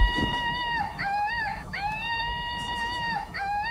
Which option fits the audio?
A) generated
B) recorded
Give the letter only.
A